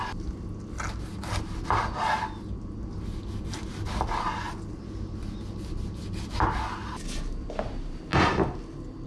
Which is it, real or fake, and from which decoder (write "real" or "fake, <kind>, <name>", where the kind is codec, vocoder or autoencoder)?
real